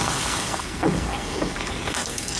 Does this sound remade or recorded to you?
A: remade